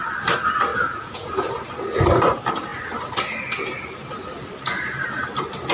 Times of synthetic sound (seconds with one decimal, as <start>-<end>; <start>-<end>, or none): 0.7-1.5